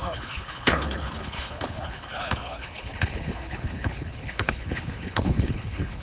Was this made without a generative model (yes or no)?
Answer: no